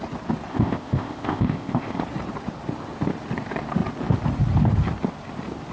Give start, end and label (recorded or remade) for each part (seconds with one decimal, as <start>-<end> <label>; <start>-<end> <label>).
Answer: 0.0-0.5 recorded; 0.5-2.0 remade; 2.0-5.7 recorded